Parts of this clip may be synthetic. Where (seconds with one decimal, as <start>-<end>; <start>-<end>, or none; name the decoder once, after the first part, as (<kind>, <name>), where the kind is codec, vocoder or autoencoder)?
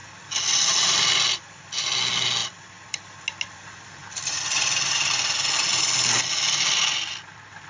none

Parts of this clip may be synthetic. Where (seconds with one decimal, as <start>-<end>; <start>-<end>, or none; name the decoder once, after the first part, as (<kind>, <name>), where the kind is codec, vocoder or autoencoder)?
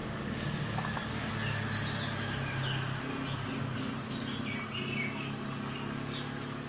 0.0-1.3 (codec, DAC)